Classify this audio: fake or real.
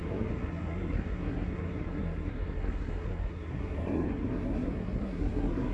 fake